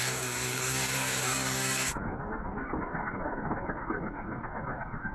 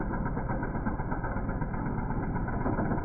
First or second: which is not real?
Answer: first